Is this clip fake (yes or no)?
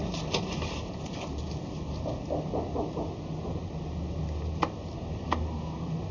no